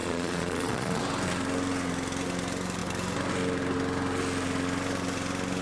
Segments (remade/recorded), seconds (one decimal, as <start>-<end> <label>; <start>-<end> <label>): 0.0-1.0 remade; 1.0-5.6 recorded